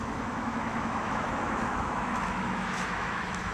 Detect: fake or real fake